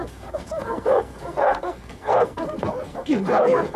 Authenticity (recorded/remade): remade